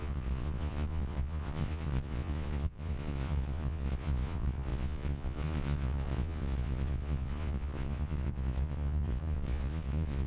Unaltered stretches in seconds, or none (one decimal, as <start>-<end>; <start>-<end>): none